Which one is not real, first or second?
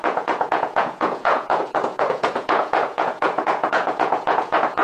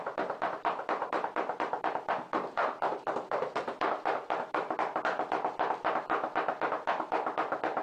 first